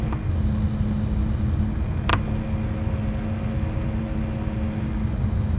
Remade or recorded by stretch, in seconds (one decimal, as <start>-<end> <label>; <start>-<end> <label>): 0.0-5.6 recorded